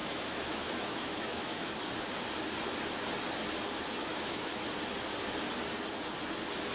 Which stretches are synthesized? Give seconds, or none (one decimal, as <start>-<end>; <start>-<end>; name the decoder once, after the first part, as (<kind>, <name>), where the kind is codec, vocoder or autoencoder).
0.0-1.7 (autoencoder, DAC-VAE); 4.1-4.6